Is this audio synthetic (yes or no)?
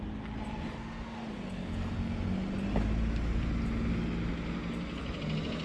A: no